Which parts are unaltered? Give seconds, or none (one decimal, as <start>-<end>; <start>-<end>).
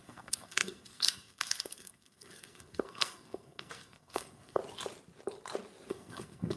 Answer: 4.6-5.9